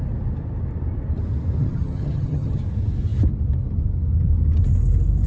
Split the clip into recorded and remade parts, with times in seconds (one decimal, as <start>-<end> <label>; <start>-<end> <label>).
0.0-1.6 recorded; 1.6-2.6 remade; 2.6-5.3 recorded